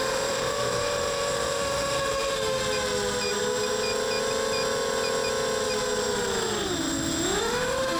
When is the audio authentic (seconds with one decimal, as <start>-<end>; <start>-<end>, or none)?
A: 2.6-7.4